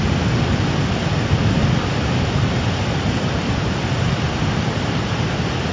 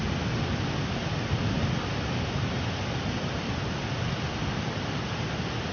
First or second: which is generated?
first